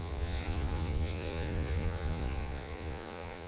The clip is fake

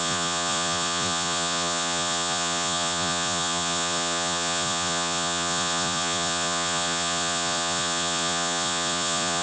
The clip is fake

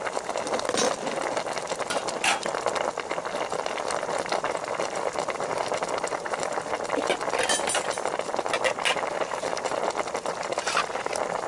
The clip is real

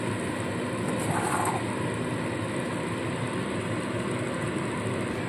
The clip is real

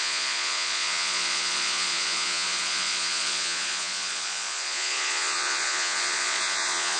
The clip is fake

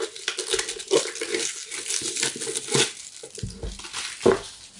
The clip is real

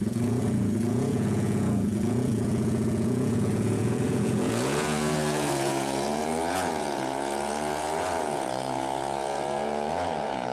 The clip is fake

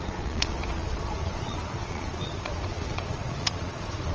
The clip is fake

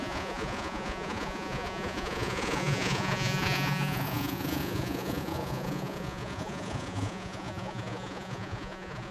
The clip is fake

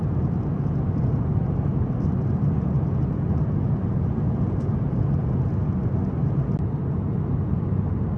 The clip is real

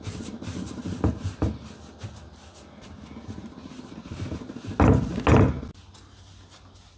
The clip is real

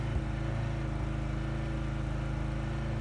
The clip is real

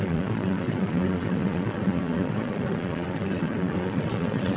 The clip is fake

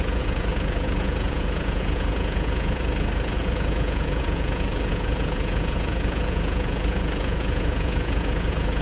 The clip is fake